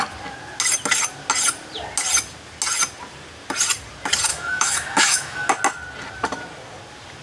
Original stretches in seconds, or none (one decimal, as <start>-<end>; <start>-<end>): 0.0-4.3; 5.5-7.2